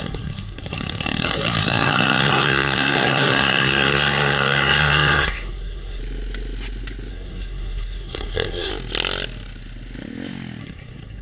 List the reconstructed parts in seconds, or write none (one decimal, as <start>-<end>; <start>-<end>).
0.0-6.0; 7.1-8.7; 10.6-11.2